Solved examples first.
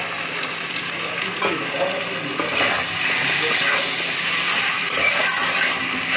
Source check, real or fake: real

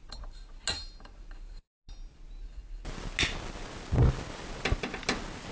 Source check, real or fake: real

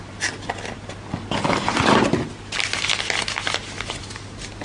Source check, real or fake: real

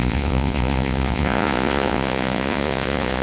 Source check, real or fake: fake